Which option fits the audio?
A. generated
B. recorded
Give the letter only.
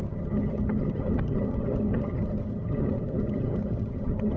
A